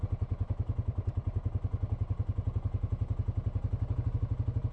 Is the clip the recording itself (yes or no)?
yes